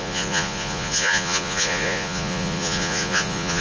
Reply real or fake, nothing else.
fake